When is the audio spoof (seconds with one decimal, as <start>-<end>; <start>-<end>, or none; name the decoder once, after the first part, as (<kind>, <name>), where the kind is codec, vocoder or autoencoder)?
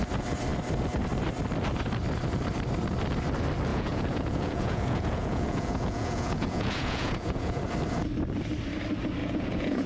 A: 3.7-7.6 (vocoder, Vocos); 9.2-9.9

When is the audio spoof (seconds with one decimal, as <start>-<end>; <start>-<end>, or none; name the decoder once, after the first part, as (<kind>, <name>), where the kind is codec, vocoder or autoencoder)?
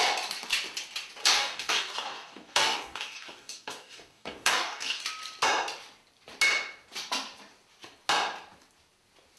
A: 1.2-5.0 (codec, DAC)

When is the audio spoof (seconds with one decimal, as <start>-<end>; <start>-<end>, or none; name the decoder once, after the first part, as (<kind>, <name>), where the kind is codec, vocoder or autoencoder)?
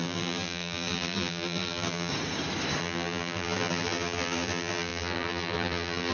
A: 0.0-2.1 (vocoder, BigVGAN v2); 2.8-6.1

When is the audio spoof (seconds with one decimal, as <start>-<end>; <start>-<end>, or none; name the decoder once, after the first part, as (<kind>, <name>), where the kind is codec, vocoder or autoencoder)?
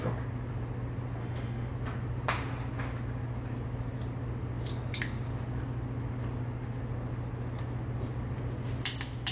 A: 1.2-1.7 (autoencoder, DAC-VAE)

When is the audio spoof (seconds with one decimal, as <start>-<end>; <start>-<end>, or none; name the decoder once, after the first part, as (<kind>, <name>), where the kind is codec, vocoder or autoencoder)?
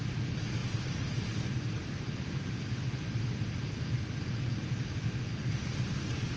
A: 0.6-2.6 (vocoder, BigVGAN v2)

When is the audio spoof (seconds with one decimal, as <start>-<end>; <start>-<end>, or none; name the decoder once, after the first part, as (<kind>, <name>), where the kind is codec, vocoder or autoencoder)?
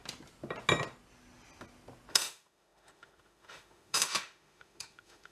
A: 2.1-5.3 (autoencoder, DAC-VAE)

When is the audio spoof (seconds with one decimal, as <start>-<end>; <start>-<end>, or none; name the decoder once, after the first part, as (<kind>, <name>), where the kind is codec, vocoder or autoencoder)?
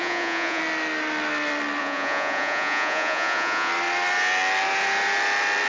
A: 0.0-0.6 (vocoder, Vocos); 1.8-3.7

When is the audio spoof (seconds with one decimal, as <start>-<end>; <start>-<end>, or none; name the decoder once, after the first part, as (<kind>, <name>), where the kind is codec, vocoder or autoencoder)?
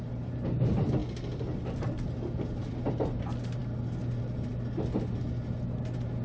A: none